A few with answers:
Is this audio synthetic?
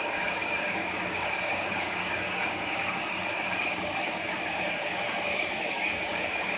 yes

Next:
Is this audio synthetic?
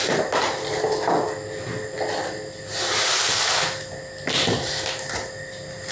no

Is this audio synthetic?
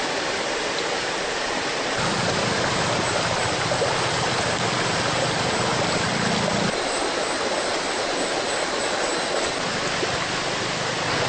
no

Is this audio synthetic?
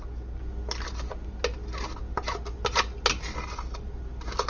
no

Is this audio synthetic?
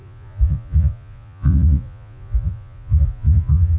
yes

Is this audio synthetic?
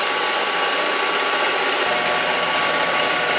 no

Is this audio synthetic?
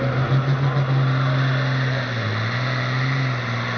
no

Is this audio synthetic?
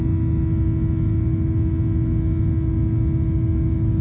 no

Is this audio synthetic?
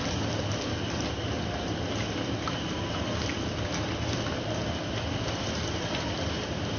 no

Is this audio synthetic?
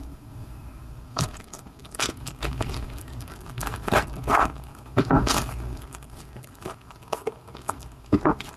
yes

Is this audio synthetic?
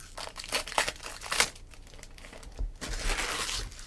no